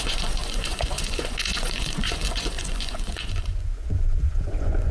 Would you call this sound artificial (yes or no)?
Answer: yes